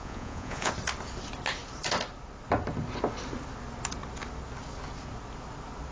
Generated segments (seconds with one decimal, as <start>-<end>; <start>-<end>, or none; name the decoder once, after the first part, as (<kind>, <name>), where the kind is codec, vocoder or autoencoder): 0.0-0.7 (vocoder, Vocos)